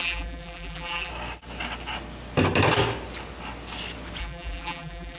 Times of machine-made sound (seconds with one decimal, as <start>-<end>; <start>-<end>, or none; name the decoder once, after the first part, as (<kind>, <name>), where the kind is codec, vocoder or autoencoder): 0.0-1.1 (vocoder, BigVGAN v2); 4.2-5.2